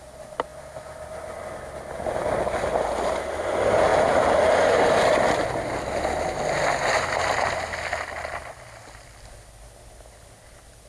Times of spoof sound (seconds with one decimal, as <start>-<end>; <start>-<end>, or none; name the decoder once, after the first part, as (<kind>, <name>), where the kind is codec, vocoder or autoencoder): none